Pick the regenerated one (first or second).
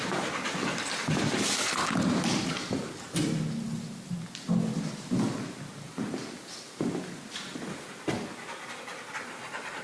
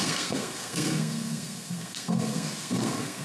second